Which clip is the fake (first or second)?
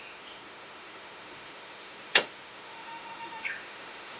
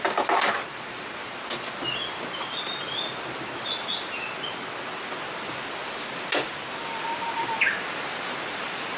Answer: first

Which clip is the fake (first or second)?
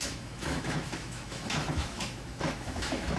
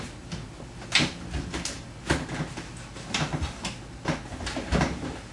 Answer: first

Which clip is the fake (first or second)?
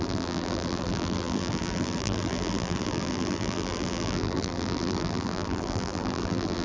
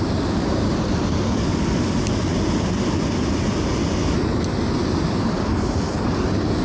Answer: first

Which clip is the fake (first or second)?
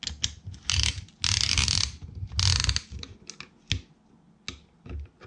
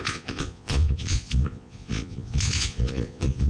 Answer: second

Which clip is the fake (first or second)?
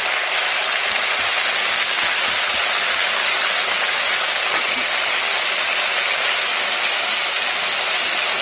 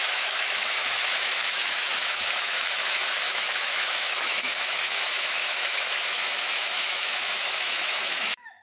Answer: second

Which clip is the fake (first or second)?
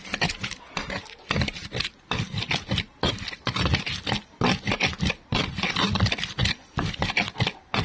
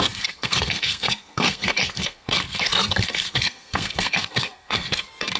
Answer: second